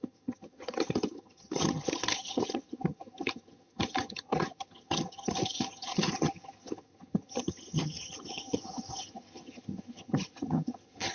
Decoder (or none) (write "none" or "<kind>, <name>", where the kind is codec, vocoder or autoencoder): vocoder, HiFi-GAN